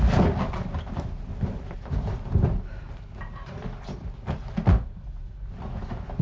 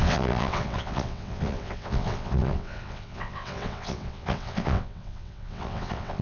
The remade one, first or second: second